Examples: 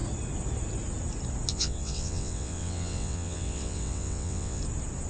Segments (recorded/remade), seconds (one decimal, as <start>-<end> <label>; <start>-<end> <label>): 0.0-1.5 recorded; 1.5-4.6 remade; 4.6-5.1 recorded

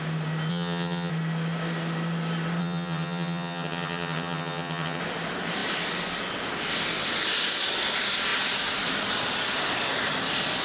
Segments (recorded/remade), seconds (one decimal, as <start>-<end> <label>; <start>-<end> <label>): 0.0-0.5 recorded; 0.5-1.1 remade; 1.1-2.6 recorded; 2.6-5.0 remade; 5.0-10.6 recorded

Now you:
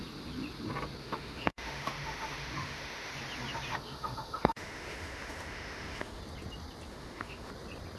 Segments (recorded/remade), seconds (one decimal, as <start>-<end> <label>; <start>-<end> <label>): 0.0-1.0 recorded; 1.0-3.1 remade; 3.1-3.7 recorded; 3.7-6.2 remade; 6.2-6.9 recorded; 6.9-7.5 remade; 7.5-8.0 recorded

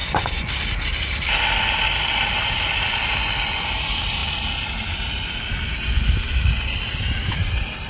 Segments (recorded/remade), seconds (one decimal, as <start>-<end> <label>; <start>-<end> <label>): 0.0-0.5 remade; 0.5-7.9 recorded

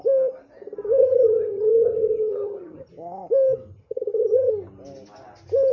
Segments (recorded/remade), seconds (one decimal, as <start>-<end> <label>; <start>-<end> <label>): 0.0-1.0 recorded; 1.0-2.9 remade; 2.9-3.8 recorded; 3.8-4.5 remade; 4.5-5.7 recorded

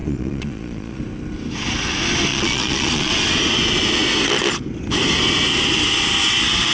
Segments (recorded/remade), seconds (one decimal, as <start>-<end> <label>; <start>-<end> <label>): 0.0-1.0 remade; 1.0-2.3 recorded; 2.3-3.1 remade; 3.1-6.7 recorded

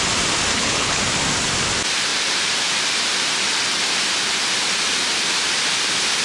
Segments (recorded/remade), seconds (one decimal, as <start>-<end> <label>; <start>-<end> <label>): 0.0-0.5 recorded; 0.5-1.0 remade; 1.0-6.2 recorded

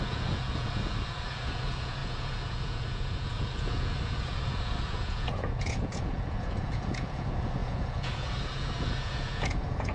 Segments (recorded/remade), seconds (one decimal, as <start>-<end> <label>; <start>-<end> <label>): 0.0-9.9 remade